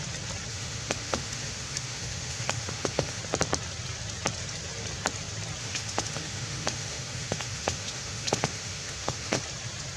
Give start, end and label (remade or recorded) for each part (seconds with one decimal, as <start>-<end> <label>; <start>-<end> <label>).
0.0-0.5 recorded; 0.5-3.2 remade; 3.2-5.6 recorded; 5.6-9.4 remade; 9.4-10.0 recorded